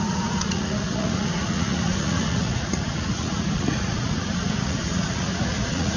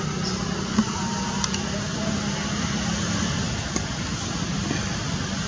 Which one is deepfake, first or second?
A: first